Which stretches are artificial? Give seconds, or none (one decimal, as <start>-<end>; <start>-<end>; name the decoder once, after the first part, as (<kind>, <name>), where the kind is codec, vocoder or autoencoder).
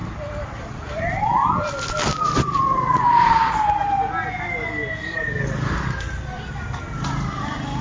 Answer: 0.0-3.5 (vocoder, BigVGAN v2)